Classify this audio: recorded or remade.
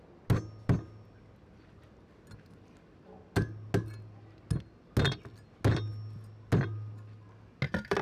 recorded